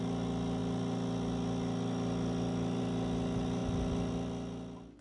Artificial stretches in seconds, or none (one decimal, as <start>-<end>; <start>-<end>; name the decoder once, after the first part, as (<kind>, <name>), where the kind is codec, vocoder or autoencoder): none